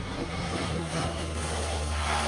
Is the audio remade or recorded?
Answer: remade